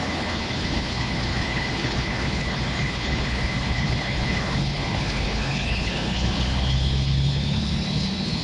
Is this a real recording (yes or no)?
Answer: no